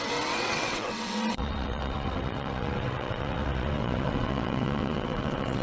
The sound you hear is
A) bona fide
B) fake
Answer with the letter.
B